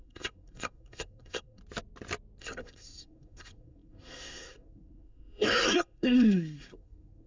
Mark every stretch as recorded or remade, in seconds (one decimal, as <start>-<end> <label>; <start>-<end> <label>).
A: 0.0-1.6 remade; 1.6-2.4 recorded; 2.4-7.3 remade

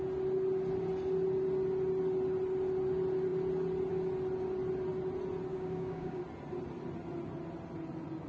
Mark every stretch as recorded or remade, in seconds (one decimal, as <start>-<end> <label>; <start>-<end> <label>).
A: 0.0-5.5 recorded; 5.5-6.2 remade; 6.2-8.3 recorded

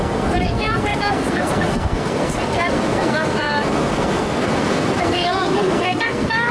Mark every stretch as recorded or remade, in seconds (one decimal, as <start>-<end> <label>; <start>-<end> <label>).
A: 0.0-6.5 remade

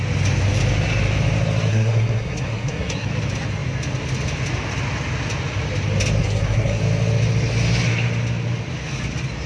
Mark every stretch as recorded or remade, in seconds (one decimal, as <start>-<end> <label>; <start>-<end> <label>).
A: 0.0-1.7 recorded; 1.7-3.1 remade; 3.1-6.2 recorded; 6.2-6.8 remade; 6.8-9.5 recorded

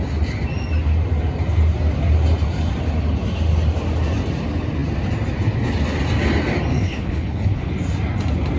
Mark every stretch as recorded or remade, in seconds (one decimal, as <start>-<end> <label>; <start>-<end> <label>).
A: 0.0-6.7 recorded; 6.7-7.7 remade; 7.7-8.6 recorded

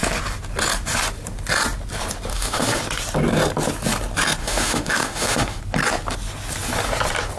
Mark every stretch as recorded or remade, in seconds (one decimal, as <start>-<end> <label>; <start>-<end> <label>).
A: 0.0-2.3 recorded; 2.3-2.8 remade; 2.8-4.4 recorded; 4.4-5.6 remade; 5.6-7.4 recorded

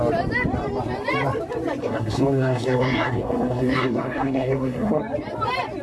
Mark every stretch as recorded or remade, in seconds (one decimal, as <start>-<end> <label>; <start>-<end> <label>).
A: 0.0-1.8 recorded; 1.8-5.0 remade; 5.0-5.8 recorded

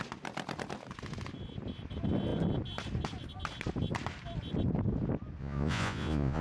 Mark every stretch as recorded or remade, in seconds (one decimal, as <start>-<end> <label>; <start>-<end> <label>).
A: 0.0-5.4 recorded; 5.4-6.4 remade